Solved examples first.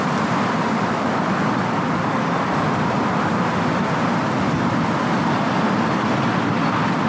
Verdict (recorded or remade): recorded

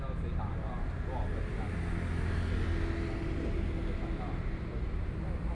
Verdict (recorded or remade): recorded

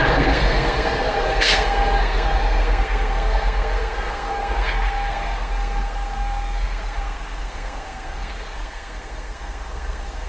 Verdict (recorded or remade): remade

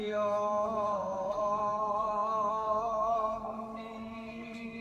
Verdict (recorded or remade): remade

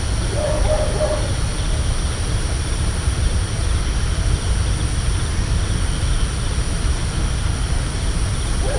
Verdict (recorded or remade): recorded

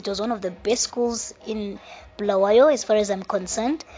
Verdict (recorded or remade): recorded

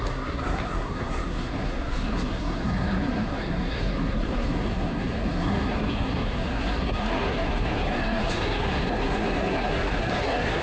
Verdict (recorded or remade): remade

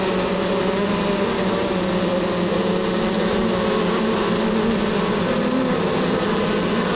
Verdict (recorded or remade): recorded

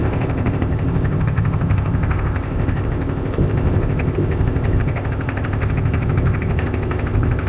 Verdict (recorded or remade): remade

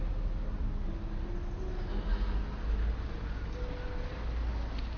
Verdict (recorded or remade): recorded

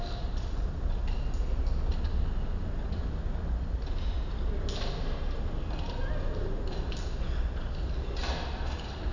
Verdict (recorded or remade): recorded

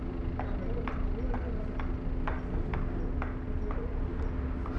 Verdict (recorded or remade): recorded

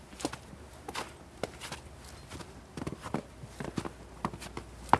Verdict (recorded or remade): recorded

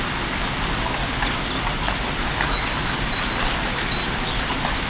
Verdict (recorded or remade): recorded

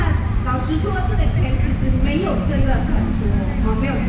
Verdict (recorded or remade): recorded